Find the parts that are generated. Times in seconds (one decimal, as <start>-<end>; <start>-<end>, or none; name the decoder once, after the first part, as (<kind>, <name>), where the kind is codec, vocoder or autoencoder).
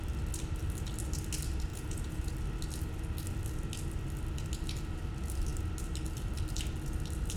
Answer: 1.7-2.3 (vocoder, Vocos)